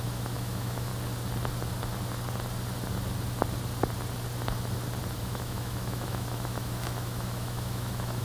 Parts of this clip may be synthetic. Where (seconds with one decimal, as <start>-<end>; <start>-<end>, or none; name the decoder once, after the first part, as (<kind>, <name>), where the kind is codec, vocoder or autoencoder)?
0.0-0.9 (autoencoder, DAC-VAE); 5.2-8.2